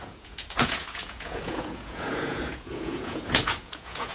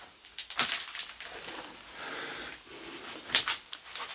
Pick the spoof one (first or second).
first